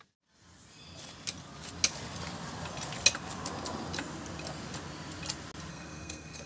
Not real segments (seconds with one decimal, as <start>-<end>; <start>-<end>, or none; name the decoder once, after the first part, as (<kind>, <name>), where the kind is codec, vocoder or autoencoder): 5.7-6.5 (codec, SNAC)